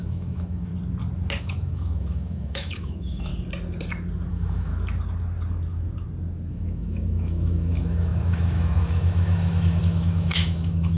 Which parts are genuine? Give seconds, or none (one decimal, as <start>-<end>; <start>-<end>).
0.7-1.4; 3.3-4.3; 4.7-6.5